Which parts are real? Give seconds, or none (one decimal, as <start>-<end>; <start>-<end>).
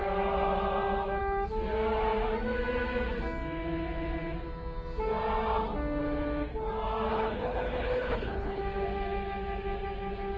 0.0-7.1; 8.6-10.4